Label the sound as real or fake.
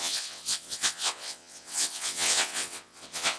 fake